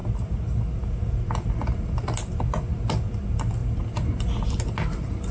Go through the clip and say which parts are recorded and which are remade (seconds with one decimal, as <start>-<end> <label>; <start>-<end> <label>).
0.0-5.3 recorded